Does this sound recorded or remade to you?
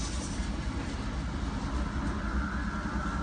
recorded